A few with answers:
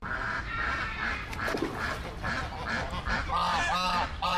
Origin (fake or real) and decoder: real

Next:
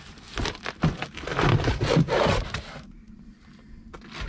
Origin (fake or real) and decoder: real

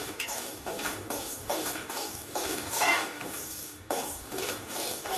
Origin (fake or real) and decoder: fake, codec, DAC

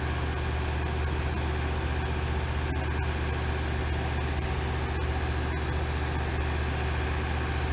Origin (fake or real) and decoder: real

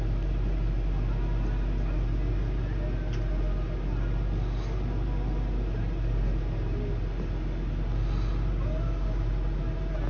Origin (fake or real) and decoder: real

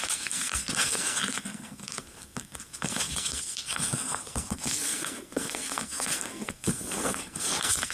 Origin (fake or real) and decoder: fake, codec, SNAC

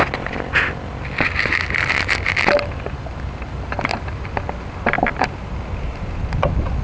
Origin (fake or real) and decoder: real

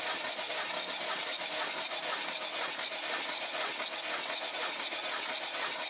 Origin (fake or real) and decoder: real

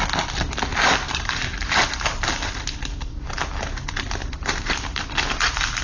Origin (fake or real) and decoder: real